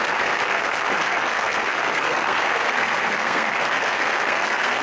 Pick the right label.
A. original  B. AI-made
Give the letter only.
B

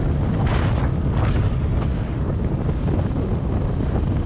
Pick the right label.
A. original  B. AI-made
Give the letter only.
A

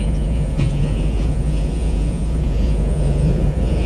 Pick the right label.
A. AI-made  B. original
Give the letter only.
A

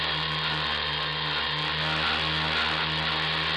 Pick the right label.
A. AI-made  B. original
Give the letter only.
B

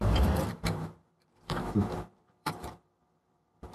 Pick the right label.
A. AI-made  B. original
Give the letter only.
A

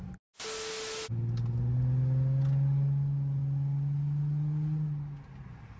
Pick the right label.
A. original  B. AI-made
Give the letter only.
A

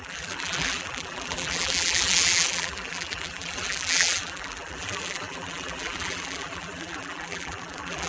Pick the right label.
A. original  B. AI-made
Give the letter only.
B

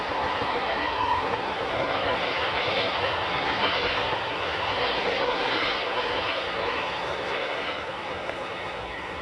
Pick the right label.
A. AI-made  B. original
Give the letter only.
A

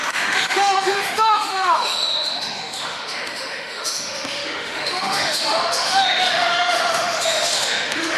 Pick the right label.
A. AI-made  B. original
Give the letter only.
A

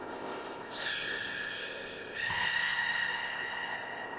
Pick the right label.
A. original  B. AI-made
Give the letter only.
B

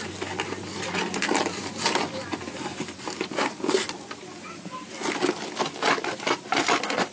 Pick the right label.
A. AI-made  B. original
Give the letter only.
B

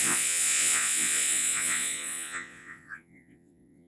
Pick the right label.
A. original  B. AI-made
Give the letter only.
B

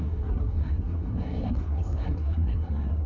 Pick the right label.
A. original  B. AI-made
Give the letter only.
B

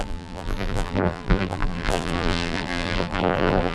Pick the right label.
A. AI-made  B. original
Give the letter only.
A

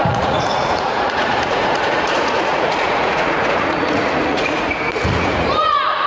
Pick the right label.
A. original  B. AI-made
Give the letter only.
B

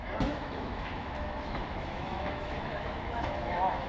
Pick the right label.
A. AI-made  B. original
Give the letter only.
A